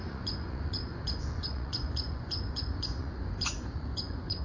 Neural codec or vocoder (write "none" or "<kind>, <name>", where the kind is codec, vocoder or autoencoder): vocoder, Vocos